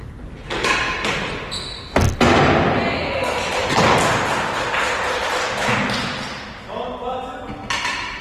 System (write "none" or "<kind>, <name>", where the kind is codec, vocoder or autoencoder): none